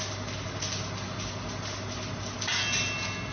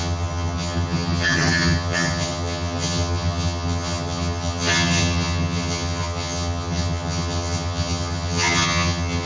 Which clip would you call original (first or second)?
first